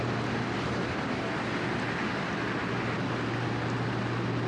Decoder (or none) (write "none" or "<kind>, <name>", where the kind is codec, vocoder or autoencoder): none